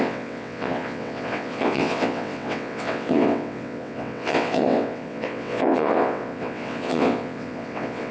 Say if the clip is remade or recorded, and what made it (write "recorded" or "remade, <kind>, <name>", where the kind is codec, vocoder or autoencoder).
remade, vocoder, WaveNeXt